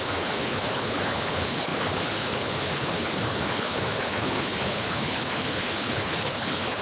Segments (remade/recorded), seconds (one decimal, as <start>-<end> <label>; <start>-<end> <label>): 0.0-6.8 remade